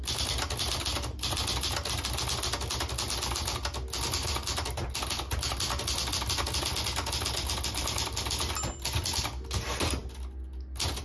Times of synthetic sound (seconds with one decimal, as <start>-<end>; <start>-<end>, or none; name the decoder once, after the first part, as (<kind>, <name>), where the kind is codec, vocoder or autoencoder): none